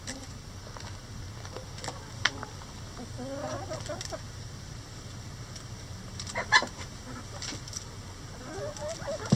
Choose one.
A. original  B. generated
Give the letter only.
A